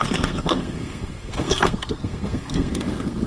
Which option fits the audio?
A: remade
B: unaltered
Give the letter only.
A